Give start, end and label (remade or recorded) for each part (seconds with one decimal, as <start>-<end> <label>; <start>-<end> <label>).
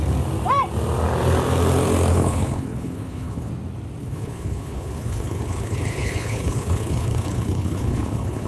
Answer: 0.0-2.1 recorded; 2.1-3.5 remade; 3.5-4.0 recorded; 4.0-8.5 remade